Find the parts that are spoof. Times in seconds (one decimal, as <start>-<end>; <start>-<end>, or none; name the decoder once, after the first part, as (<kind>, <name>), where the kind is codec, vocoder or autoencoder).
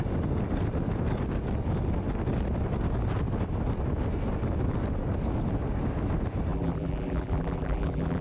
6.5-8.2 (vocoder, BigVGAN v2)